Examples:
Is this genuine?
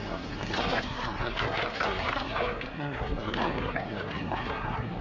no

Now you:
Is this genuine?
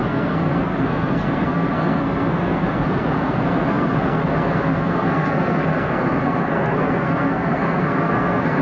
no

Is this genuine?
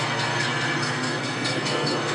no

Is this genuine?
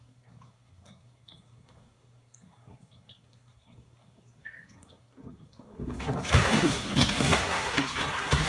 no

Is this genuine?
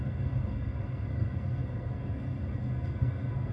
no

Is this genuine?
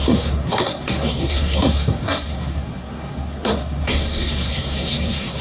no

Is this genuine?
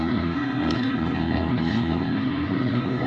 no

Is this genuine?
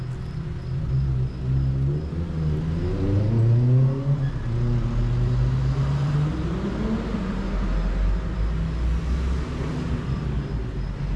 yes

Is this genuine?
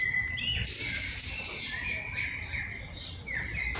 yes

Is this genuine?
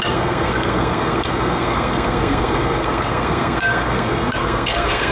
no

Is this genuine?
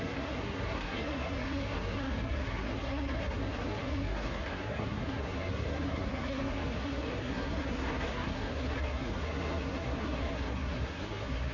no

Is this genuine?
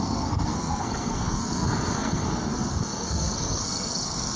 no